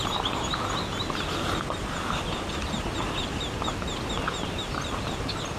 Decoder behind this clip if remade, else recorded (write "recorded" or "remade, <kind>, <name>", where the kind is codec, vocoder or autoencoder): recorded